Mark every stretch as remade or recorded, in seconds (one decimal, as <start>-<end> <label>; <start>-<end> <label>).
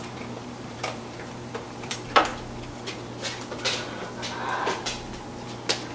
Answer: 0.0-2.3 remade; 2.3-5.9 recorded